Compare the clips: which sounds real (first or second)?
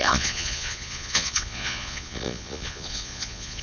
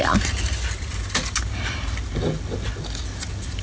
second